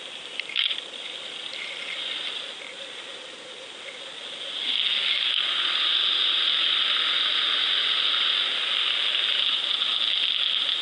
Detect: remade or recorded recorded